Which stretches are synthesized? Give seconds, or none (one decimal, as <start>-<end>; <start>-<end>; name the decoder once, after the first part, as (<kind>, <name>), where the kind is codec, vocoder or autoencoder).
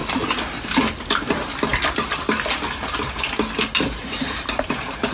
none